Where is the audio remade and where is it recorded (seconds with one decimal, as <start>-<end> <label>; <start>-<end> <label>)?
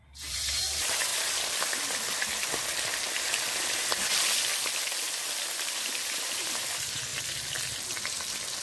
0.0-1.1 remade; 1.1-5.8 recorded; 5.8-7.1 remade; 7.1-8.6 recorded